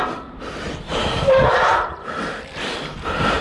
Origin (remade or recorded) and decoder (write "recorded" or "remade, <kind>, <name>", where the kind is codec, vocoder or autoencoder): remade, vocoder, BigVGAN v2